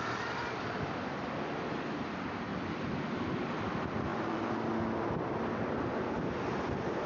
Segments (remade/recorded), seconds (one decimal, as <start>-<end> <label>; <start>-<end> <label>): 0.0-7.1 recorded